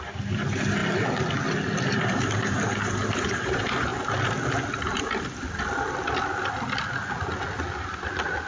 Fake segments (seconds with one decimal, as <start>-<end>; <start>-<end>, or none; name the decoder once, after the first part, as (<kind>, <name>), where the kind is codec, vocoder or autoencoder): 0.0-0.8 (vocoder, BigVGAN v2); 1.8-3.9